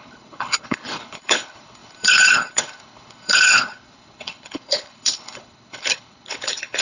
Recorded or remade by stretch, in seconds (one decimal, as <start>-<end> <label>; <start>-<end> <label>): 0.0-6.8 remade